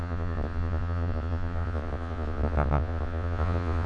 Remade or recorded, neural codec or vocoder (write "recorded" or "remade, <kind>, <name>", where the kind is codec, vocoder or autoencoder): remade, vocoder, Vocos